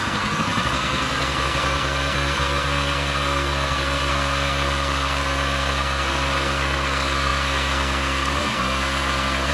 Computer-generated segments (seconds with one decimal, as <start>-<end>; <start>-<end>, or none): 0.0-9.5